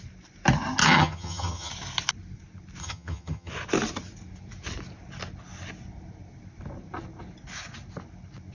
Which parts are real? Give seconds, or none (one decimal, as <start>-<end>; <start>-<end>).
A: 0.0-0.8; 1.7-2.8; 3.5-8.5